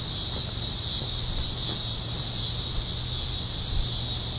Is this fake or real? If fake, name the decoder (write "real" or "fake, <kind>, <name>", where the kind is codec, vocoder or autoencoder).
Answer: real